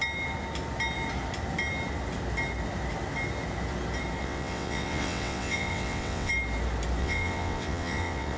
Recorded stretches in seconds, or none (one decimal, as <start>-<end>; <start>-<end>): 0.0-4.2; 6.3-7.0